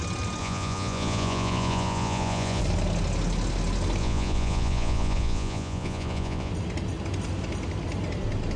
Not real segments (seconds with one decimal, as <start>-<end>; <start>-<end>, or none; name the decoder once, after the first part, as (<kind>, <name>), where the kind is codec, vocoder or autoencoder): 0.4-2.6 (vocoder, Vocos); 4.0-6.5